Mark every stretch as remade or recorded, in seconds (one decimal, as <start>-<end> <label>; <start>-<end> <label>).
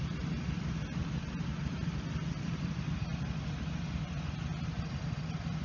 0.0-5.6 recorded